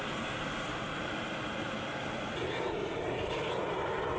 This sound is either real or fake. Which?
real